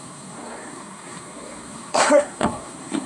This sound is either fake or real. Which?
fake